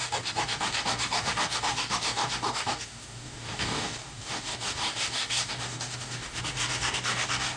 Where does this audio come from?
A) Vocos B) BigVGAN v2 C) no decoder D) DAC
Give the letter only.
D